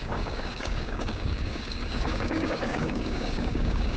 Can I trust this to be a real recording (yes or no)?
no